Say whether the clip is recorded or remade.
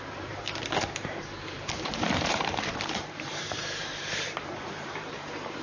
remade